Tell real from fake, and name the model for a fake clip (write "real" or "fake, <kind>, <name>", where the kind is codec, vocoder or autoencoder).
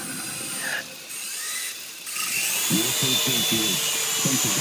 real